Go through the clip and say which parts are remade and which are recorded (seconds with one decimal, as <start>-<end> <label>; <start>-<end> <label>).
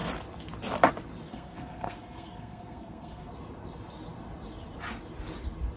0.0-1.3 recorded; 1.3-3.3 remade; 3.3-5.8 recorded